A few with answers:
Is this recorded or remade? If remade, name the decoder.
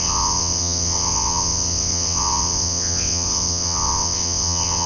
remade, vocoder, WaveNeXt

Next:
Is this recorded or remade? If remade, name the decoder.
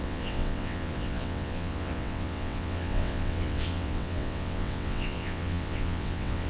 remade, vocoder, WaveNeXt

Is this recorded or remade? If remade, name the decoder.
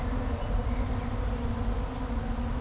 recorded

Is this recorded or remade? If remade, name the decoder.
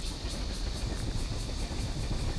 recorded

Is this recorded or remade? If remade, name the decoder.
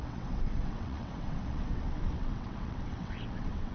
remade, vocoder, WaveNeXt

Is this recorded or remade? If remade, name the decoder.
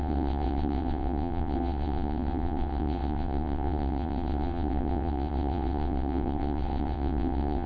remade, vocoder, WaveNeXt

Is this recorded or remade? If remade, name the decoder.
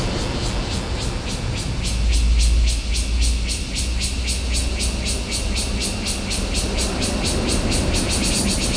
recorded